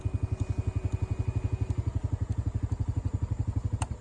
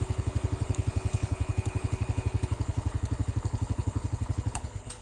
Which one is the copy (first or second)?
second